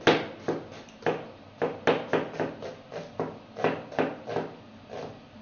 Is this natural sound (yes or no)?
yes